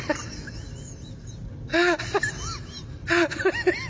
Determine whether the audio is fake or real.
real